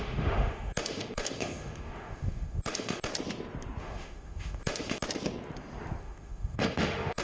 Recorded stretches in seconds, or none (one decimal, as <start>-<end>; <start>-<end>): 3.1-3.8; 5.0-6.0